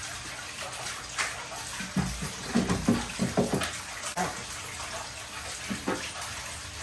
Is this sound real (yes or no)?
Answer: yes